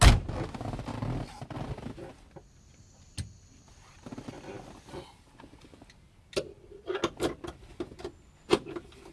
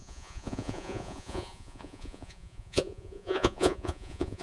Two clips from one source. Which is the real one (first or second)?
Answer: first